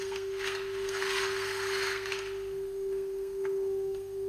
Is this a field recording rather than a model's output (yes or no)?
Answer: no